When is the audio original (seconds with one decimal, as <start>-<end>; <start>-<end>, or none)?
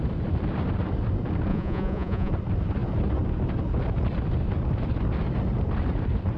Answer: 0.0-1.5; 2.3-6.4